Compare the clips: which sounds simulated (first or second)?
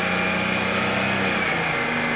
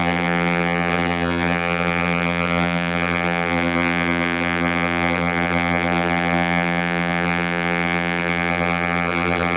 second